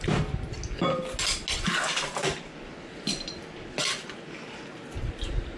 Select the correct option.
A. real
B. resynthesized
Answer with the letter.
A